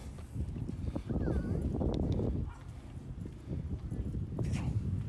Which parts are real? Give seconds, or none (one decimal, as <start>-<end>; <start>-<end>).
0.0-5.1

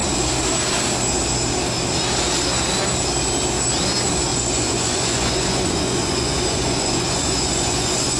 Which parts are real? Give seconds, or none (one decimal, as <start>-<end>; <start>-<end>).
0.0-4.3